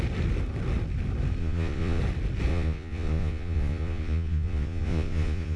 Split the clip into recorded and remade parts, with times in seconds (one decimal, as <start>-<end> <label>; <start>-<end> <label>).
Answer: 0.0-1.4 recorded; 1.4-2.0 remade; 2.0-2.5 recorded; 2.5-5.6 remade